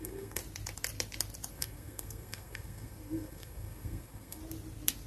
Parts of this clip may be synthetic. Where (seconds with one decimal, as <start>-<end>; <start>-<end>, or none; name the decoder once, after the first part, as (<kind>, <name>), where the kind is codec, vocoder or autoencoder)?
0.0-0.4 (codec, SNAC); 1.5-4.4

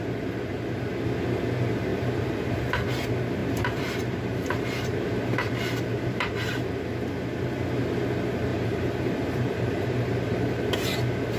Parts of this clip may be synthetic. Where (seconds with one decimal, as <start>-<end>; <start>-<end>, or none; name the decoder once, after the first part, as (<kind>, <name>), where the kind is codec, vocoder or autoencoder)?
1.9-2.6 (vocoder, BigVGAN v2); 3.4-7.0; 8.5-10.7

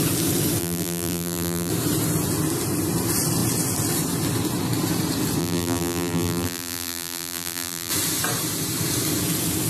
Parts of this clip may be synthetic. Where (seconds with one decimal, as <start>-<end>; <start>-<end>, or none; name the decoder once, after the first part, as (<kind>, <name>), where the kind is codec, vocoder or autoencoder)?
0.6-1.7 (vocoder, BigVGAN v2); 5.4-7.9

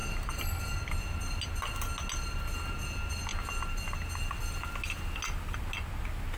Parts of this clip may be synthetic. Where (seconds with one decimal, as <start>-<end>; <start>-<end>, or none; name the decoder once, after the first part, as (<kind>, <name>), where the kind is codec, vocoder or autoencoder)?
none

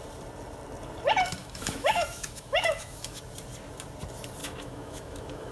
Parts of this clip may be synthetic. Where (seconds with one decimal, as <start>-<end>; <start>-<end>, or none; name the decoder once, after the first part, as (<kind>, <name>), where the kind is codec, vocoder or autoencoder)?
1.4-3.2 (autoencoder, DAC-VAE); 4.4-5.5

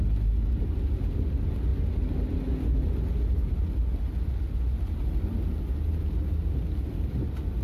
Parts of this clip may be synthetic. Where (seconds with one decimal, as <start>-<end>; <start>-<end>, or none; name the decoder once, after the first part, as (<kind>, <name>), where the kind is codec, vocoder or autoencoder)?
none

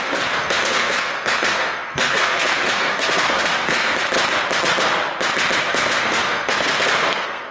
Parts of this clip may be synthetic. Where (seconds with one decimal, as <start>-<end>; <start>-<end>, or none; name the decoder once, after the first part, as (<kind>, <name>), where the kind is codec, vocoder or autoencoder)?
0.0-3.9 (codec, SNAC); 5.6-7.5

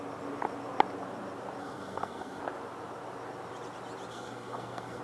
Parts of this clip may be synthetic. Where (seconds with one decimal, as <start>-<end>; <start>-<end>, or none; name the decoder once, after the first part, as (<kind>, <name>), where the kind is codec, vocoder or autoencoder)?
1.6-2.4 (codec, SNAC); 4.1-5.0